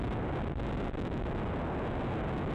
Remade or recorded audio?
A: recorded